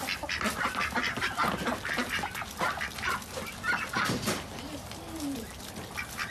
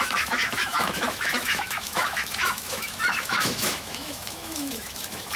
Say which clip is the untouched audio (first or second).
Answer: first